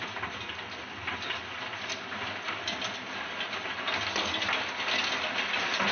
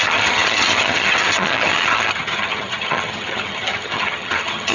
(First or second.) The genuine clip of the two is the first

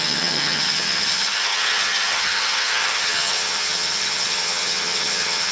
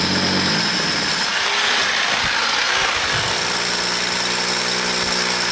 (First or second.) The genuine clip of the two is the second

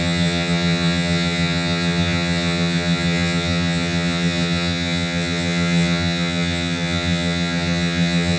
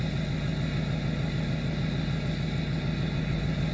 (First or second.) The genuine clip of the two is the second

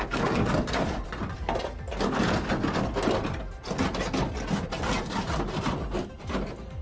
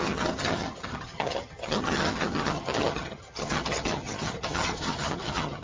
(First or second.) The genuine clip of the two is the first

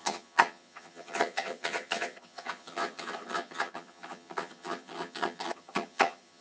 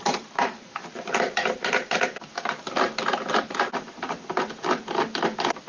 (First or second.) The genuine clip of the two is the second